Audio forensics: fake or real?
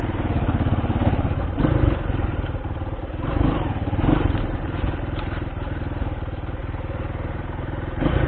fake